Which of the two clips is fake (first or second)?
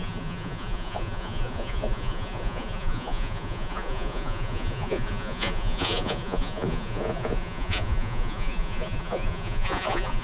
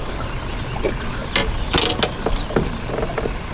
first